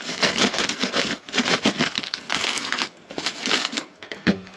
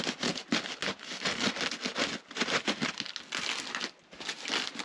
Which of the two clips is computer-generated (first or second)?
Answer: first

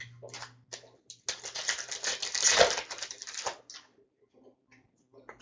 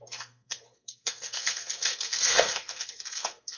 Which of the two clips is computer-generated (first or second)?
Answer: second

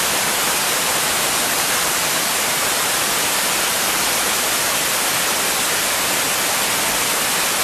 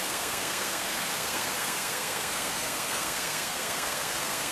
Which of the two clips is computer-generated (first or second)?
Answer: second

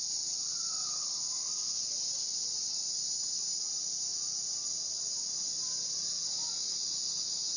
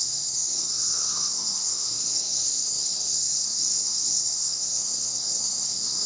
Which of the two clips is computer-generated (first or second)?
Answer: second